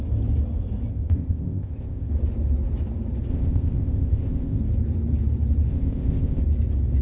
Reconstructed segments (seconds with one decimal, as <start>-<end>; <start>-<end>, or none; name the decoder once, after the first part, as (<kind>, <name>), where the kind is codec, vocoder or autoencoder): 0.9-2.1 (codec, ZipCodec); 3.3-4.6; 5.7-6.4